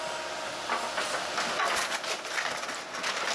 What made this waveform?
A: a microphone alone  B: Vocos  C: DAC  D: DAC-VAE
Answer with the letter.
A